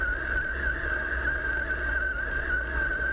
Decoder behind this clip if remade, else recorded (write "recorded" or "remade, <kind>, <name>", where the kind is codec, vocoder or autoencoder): recorded